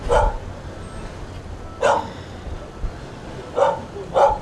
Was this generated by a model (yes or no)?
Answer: no